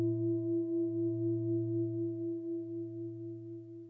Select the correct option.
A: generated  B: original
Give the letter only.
B